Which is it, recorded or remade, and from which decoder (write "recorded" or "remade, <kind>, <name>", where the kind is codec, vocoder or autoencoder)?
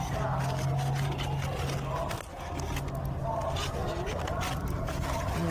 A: recorded